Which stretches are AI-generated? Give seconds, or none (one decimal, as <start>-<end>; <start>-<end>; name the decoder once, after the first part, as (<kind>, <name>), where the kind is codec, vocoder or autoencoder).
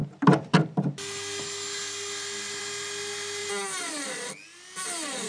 none